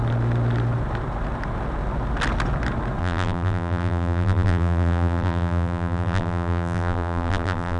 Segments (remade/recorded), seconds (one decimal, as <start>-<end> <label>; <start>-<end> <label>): 0.0-3.0 recorded; 3.0-7.8 remade